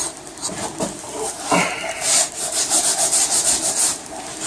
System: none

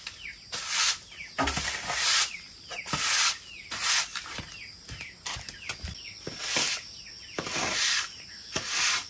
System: none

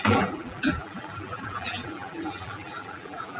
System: vocoder, BigVGAN v2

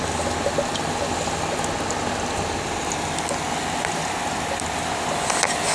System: none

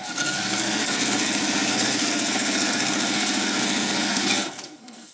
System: codec, SNAC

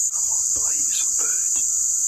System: none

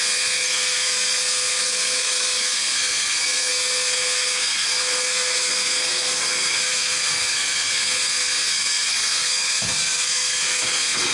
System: codec, SNAC